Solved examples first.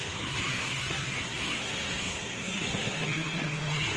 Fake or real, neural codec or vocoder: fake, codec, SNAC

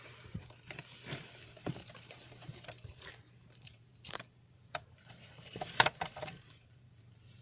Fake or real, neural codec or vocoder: fake, vocoder, BigVGAN v2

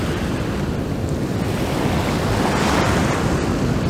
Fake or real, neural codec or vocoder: real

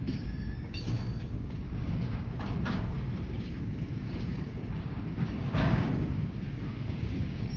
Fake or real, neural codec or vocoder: fake, codec, DAC